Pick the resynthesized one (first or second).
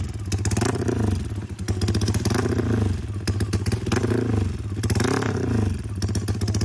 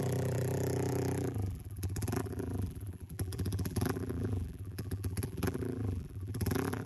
second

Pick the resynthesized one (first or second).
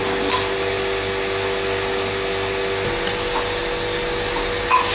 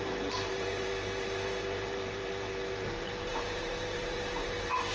second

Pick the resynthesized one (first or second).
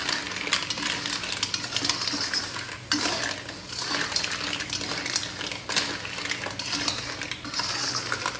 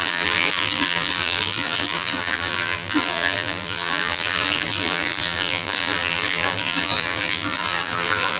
second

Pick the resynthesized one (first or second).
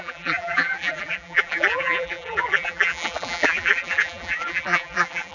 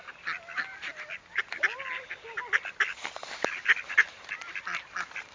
first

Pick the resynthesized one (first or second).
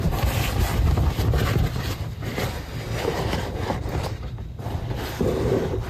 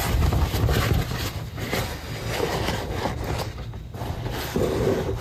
first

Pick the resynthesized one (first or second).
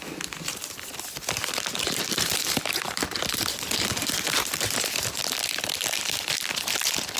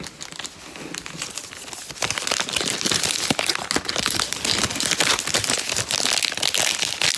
first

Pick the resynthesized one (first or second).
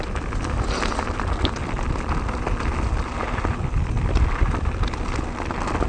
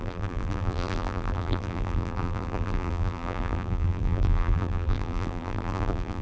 second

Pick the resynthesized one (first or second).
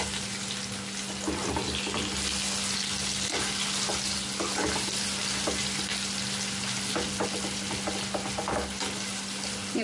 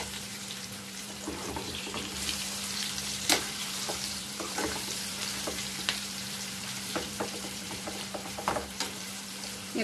second